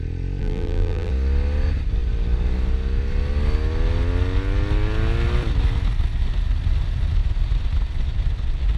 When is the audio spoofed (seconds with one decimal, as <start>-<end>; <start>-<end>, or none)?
0.4-1.1

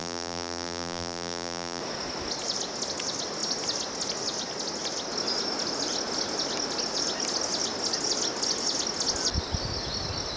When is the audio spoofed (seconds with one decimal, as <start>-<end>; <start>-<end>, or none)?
0.0-1.8

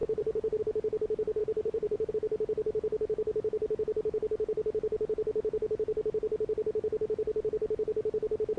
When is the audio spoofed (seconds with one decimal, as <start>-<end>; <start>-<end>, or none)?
0.0-0.6; 1.4-2.1